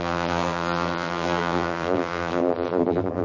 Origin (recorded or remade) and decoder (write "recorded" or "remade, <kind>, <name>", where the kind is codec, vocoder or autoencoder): remade, vocoder, BigVGAN v2